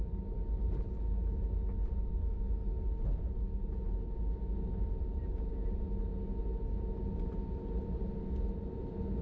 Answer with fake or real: real